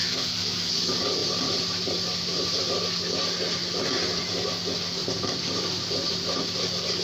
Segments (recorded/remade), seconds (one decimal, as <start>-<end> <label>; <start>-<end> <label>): 0.0-0.7 remade; 0.7-7.0 recorded